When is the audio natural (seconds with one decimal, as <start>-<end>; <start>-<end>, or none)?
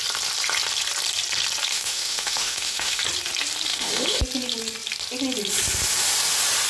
0.0-1.7; 3.0-3.7; 4.2-6.7